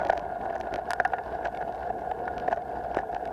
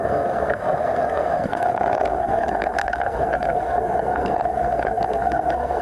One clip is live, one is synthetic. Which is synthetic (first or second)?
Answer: second